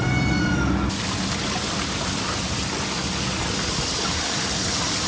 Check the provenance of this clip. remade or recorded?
recorded